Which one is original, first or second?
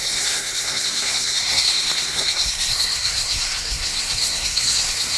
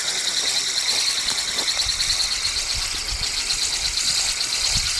second